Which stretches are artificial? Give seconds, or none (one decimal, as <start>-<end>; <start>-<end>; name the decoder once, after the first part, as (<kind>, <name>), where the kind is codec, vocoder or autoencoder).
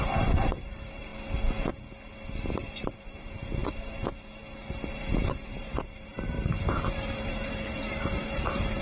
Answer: 0.0-1.1 (vocoder, BigVGAN v2); 3.0-3.6; 5.0-8.8